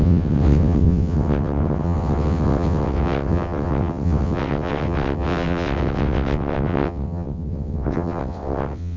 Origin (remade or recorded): remade